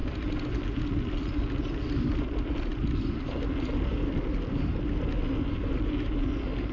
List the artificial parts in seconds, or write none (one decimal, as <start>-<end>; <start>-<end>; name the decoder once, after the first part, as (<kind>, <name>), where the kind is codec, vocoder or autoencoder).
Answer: none